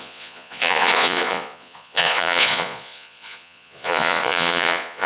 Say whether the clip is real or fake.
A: fake